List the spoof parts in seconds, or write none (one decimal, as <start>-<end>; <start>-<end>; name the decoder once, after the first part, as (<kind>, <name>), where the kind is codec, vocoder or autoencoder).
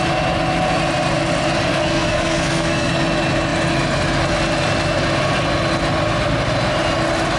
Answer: 1.7-2.9 (codec, SNAC)